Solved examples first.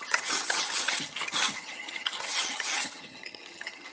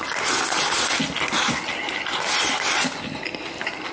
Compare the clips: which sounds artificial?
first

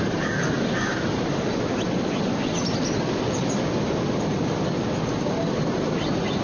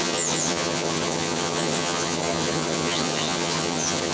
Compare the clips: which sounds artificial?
second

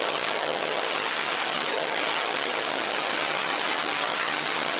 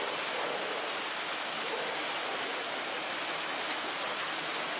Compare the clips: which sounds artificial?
first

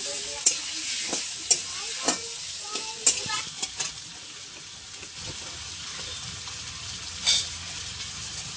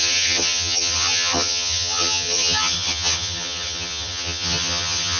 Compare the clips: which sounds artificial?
second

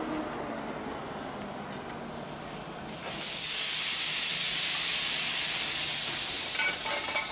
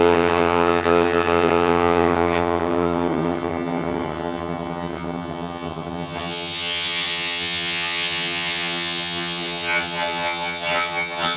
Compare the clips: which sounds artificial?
second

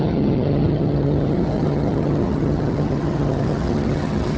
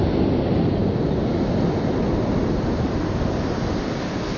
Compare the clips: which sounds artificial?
first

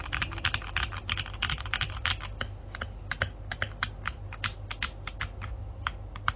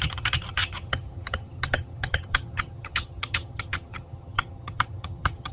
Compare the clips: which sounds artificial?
second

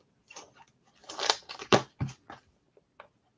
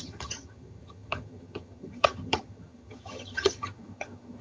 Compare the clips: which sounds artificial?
second